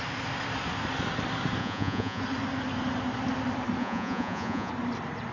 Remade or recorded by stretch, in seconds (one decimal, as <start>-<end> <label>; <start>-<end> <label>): 0.0-1.6 recorded; 1.6-2.2 remade; 2.2-3.8 recorded; 3.8-4.7 remade; 4.7-5.3 recorded